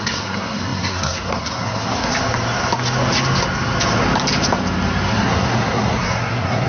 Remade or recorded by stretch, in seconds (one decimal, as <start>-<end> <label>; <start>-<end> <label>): 0.0-2.1 remade; 2.1-5.1 recorded; 5.1-6.7 remade